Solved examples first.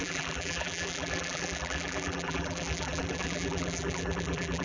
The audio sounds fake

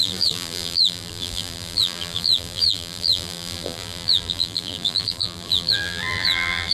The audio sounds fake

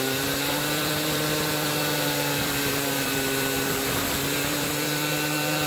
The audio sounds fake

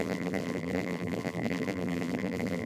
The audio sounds fake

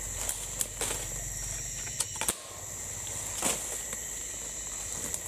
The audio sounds real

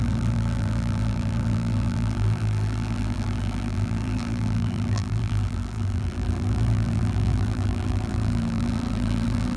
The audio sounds fake